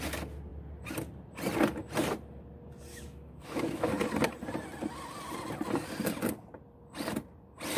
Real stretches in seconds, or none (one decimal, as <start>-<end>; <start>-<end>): 0.0-2.9; 3.9-7.8